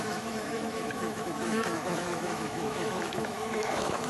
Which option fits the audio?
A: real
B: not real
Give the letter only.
B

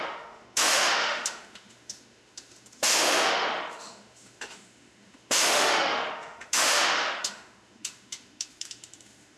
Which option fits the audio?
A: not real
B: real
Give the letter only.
A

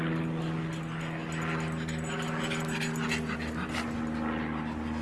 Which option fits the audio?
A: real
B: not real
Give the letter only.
A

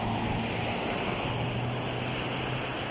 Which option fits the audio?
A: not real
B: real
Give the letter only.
B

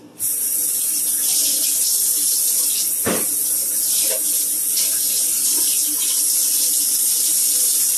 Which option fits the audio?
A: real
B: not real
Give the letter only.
A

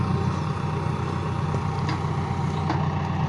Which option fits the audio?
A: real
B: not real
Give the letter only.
A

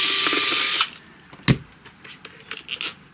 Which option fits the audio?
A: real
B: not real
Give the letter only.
A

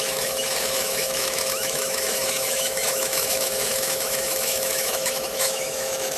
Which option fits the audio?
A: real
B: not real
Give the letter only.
B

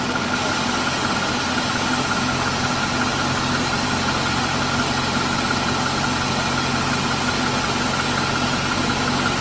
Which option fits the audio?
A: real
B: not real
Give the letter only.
A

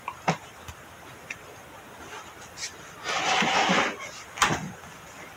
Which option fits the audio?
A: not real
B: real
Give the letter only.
B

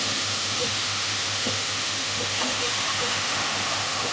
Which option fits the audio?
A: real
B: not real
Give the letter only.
B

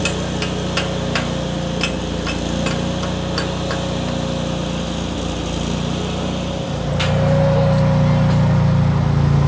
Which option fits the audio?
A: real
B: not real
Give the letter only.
A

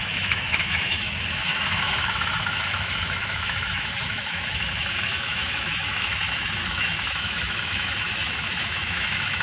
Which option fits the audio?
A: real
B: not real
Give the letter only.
B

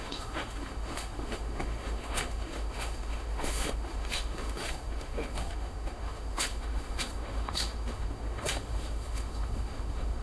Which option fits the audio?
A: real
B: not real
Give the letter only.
B